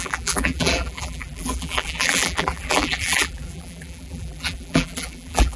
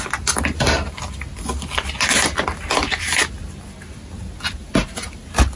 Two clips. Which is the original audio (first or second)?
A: second